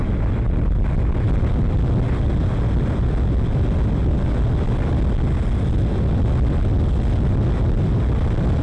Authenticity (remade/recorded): recorded